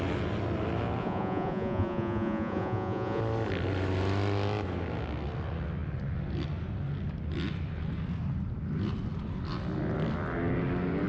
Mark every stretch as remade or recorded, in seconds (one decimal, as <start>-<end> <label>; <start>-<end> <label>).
0.0-1.0 recorded; 1.0-3.2 remade; 3.2-11.1 recorded